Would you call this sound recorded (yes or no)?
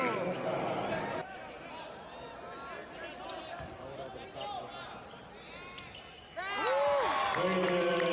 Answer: yes